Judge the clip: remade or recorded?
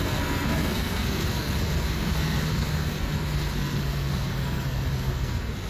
remade